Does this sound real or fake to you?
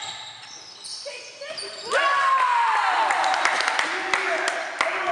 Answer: real